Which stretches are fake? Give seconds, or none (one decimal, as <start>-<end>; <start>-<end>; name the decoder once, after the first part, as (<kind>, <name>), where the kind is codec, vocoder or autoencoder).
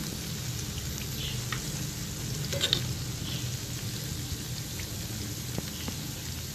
none